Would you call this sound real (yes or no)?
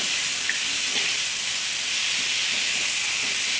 yes